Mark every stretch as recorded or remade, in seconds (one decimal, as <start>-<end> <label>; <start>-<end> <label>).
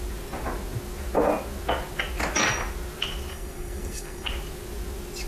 0.0-3.3 recorded; 3.3-4.3 remade; 4.3-5.3 recorded